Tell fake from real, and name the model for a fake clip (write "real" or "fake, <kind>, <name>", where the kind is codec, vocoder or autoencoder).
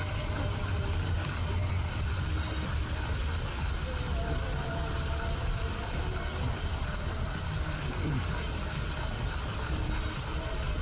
real